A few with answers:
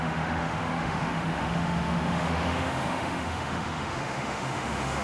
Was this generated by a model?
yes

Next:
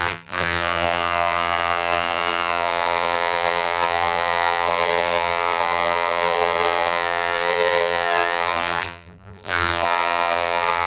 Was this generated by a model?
yes